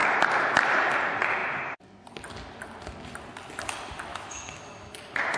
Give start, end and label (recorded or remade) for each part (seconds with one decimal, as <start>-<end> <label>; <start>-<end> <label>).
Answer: 0.0-4.1 recorded; 4.1-4.6 remade; 4.6-5.4 recorded